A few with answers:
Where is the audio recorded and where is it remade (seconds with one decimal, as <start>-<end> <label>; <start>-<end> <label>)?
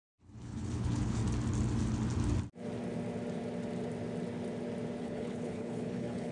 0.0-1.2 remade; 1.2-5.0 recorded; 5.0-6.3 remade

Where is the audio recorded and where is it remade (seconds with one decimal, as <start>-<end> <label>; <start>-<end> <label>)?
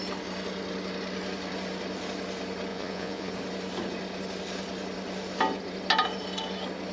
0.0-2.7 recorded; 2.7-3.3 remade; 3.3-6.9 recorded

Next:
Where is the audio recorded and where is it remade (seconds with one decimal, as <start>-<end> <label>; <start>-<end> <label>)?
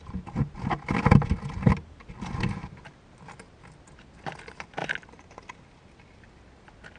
0.0-7.0 recorded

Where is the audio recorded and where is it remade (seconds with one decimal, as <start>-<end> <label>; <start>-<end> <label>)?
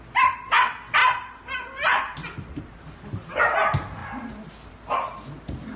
0.0-1.0 recorded; 1.0-3.4 remade; 3.4-5.8 recorded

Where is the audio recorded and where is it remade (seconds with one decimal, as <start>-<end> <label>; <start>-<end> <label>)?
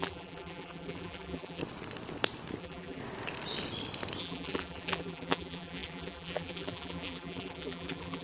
0.0-1.6 remade; 1.6-2.6 recorded; 2.6-3.0 remade; 3.0-4.2 recorded; 4.2-8.2 remade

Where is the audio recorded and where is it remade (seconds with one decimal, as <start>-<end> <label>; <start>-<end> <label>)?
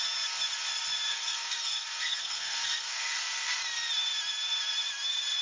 0.0-1.1 recorded; 1.1-3.6 remade; 3.6-5.4 recorded